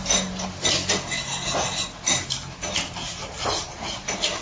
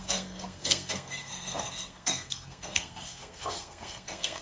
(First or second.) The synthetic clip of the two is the second